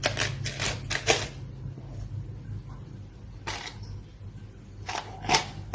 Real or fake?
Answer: real